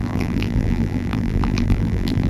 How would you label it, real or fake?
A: fake